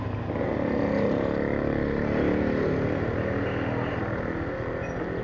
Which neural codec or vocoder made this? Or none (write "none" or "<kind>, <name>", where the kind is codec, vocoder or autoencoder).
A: none